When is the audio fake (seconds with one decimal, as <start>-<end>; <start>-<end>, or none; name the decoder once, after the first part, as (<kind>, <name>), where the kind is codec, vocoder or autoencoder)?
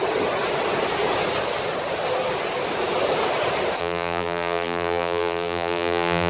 3.8-6.3 (vocoder, BigVGAN v2)